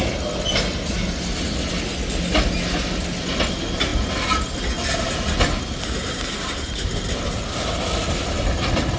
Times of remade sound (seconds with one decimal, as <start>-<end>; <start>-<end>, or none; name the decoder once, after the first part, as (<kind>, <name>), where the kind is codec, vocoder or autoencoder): none